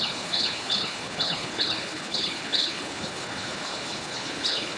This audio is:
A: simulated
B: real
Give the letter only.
A